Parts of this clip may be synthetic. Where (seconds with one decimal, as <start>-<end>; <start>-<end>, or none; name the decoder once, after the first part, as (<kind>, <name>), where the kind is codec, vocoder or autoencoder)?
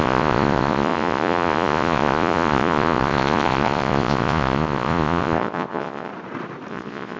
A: 0.0-6.1 (vocoder, Vocos); 6.7-7.2